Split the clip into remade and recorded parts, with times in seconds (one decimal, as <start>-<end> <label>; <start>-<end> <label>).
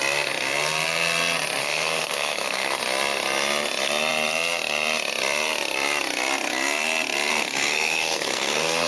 0.0-1.6 recorded; 1.6-2.8 remade; 2.8-7.3 recorded; 7.3-8.9 remade